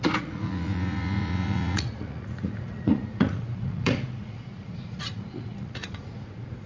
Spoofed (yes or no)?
yes